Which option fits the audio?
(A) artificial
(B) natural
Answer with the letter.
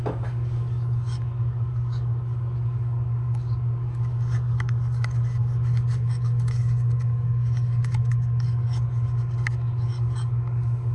A